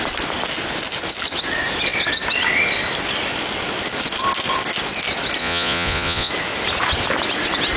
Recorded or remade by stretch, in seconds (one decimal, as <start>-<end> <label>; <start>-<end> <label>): 0.0-5.4 recorded; 5.4-6.3 remade; 6.3-7.8 recorded